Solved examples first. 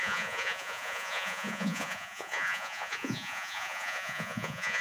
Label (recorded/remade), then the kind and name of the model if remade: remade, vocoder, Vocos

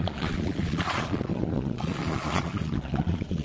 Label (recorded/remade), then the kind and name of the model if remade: remade, vocoder, Vocos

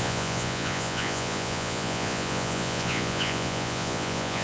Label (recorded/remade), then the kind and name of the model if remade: remade, vocoder, Vocos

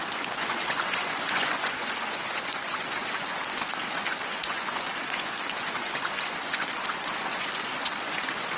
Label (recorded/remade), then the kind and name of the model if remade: remade, vocoder, Vocos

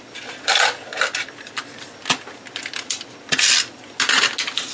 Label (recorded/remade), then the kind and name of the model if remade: recorded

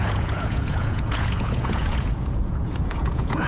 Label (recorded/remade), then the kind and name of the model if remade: remade, vocoder, Vocos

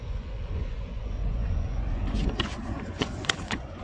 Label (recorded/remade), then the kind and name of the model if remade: remade, vocoder, Vocos